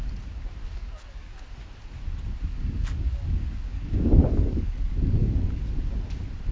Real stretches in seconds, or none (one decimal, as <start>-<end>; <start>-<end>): 0.0-0.8; 1.5-2.5; 5.6-6.5